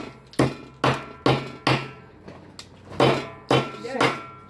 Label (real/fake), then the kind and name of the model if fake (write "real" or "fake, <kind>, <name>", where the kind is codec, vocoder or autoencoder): real